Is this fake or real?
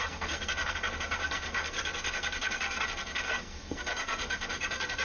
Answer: fake